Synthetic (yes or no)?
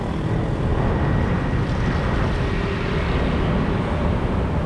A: no